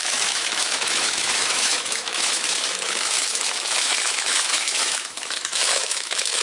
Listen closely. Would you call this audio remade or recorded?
remade